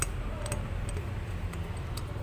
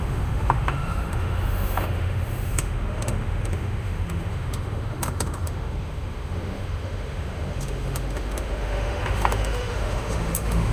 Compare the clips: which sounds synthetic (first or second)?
second